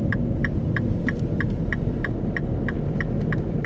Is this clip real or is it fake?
fake